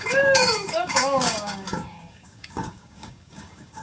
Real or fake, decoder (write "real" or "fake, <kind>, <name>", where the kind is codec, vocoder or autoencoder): fake, codec, DAC